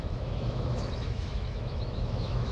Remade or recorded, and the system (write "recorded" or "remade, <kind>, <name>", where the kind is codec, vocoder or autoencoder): remade, autoencoder, DAC-VAE